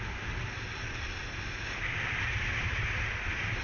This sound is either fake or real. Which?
real